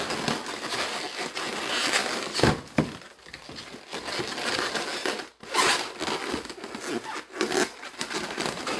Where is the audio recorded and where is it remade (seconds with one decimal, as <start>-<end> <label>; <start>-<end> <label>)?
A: 0.0-8.8 recorded